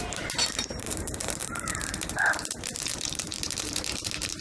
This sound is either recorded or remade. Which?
remade